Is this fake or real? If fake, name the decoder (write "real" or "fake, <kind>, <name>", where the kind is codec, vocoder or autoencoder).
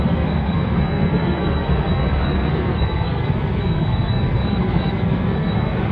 fake, codec, SNAC